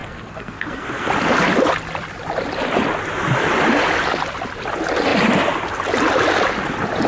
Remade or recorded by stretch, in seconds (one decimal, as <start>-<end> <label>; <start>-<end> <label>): 0.0-1.1 remade; 1.1-7.1 recorded